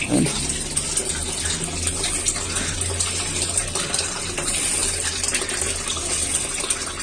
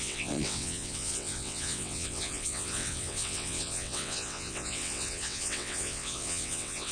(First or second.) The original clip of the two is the first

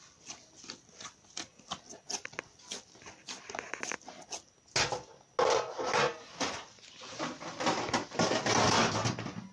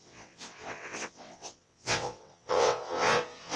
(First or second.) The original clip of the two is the first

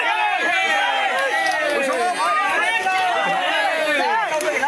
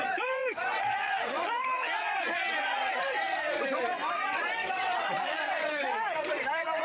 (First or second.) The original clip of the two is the first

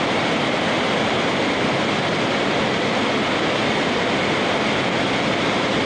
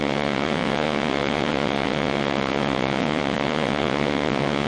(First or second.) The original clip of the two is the first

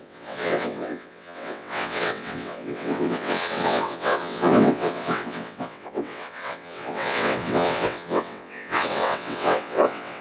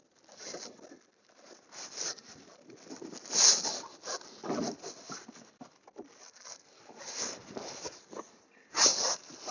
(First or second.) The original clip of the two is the second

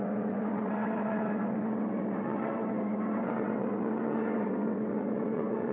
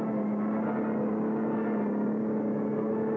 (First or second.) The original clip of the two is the second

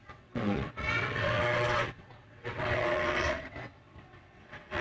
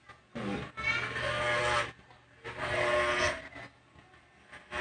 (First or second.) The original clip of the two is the second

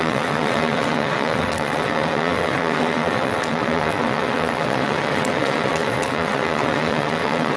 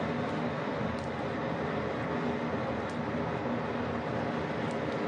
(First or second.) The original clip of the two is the second